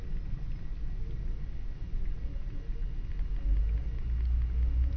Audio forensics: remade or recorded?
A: recorded